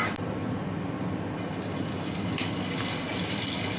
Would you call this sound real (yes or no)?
yes